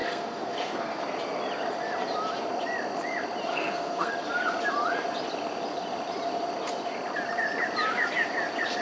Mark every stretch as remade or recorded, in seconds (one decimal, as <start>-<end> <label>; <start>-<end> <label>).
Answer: 0.0-1.0 remade; 1.0-3.5 recorded; 3.5-4.1 remade; 4.1-8.8 recorded